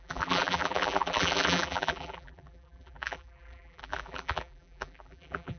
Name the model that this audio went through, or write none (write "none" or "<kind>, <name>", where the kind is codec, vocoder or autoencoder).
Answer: vocoder, BigVGAN v2